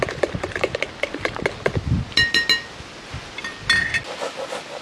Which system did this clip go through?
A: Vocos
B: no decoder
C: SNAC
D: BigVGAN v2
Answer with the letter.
B